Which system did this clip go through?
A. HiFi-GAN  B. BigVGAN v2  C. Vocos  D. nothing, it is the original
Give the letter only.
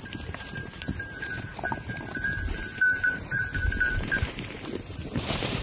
B